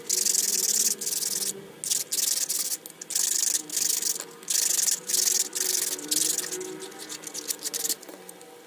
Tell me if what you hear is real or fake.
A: real